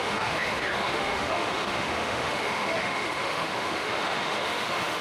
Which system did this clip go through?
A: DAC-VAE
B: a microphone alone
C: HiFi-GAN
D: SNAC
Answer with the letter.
A